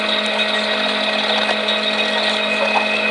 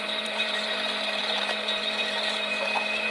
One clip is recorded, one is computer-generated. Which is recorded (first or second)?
first